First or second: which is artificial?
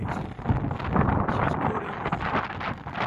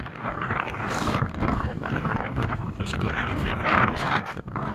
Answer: second